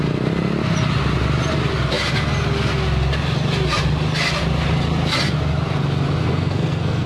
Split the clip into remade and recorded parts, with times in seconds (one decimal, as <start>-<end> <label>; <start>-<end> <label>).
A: 0.0-6.2 recorded; 6.2-7.1 remade